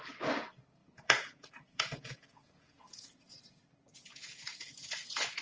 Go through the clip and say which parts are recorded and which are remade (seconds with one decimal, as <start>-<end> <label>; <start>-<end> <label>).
0.0-0.8 recorded; 0.8-3.2 remade; 3.2-3.9 recorded; 3.9-5.4 remade